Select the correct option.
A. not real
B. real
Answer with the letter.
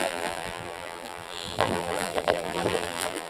A